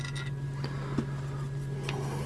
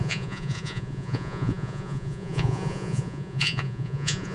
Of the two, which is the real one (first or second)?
first